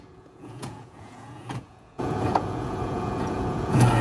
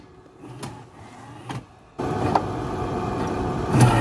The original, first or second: second